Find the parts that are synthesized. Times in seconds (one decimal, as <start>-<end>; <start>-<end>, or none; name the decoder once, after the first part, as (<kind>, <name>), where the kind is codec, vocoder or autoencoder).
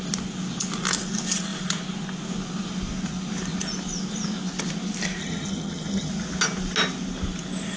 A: 5.2-6.1 (vocoder, HiFi-GAN)